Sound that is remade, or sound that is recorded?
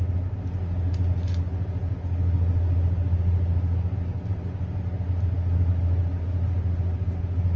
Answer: recorded